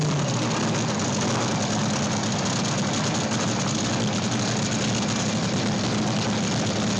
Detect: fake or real real